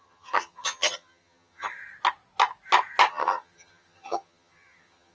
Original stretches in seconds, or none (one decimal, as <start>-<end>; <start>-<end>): 1.8-3.1